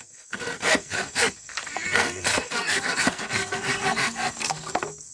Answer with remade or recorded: remade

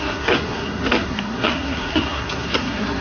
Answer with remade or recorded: remade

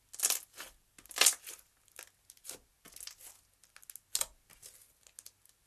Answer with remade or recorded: recorded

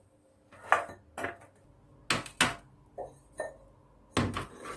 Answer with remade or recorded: recorded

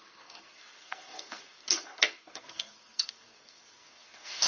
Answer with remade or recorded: remade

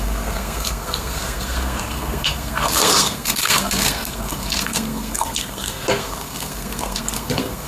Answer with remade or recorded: remade